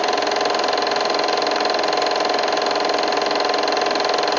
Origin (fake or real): real